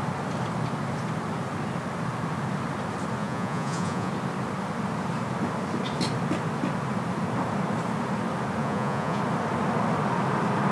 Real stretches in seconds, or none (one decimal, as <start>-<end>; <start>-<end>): 0.0-3.2; 4.1-8.6; 9.2-10.7